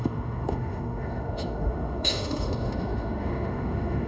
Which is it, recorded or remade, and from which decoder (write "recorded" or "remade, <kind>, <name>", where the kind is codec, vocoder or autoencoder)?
remade, autoencoder, DAC-VAE